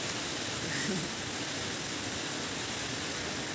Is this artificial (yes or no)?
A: no